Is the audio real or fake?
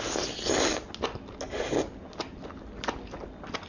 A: real